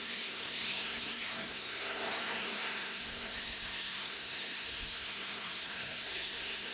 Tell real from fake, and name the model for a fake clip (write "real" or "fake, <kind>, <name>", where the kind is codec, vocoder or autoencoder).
fake, codec, SNAC